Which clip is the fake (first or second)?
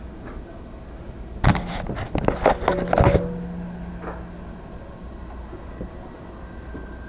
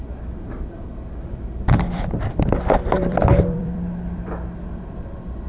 second